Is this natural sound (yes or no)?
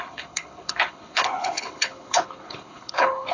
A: no